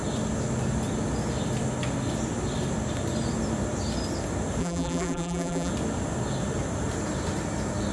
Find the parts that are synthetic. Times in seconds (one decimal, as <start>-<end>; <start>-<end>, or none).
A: 4.6-5.7